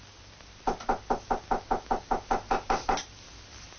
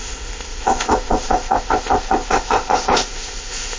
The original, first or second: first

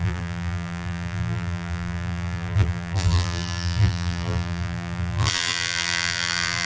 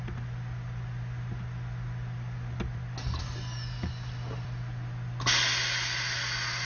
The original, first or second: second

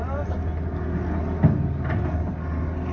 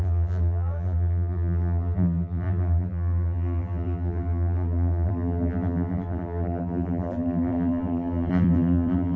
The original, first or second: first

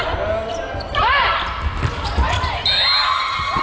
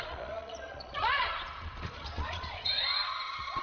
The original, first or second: first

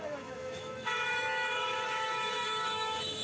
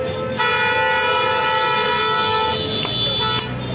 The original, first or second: second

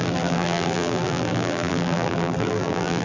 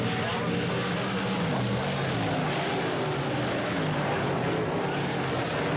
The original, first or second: second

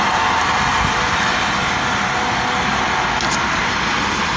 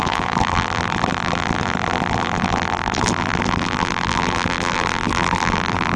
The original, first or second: first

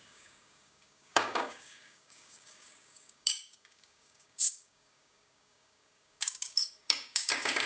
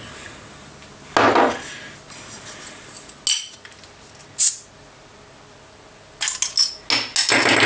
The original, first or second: second